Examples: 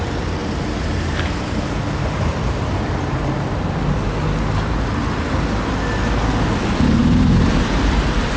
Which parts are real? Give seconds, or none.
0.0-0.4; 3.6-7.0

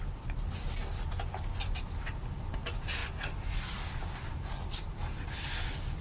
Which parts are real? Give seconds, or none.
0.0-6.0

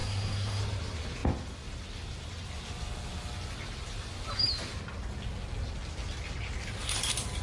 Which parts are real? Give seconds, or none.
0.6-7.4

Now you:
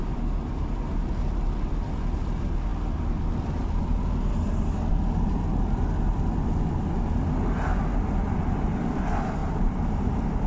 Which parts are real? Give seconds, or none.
0.0-9.4; 10.1-10.5

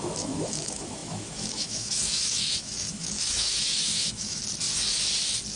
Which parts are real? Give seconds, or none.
4.4-5.6

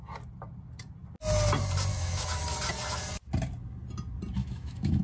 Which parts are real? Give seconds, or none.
0.0-1.9; 2.4-4.4